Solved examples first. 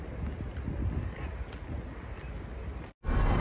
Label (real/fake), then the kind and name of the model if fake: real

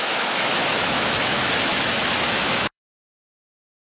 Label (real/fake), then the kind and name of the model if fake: fake, autoencoder, DAC-VAE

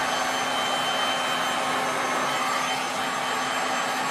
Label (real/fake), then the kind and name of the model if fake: real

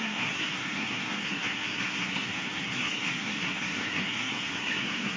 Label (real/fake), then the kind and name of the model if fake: fake, codec, SNAC